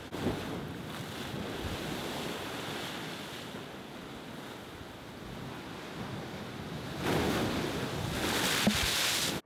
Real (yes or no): yes